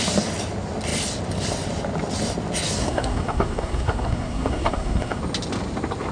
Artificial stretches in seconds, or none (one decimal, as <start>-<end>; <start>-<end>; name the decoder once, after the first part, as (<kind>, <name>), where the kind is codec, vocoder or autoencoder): 2.8-5.2 (codec, SNAC)